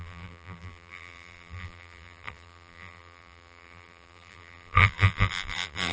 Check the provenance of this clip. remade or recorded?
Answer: remade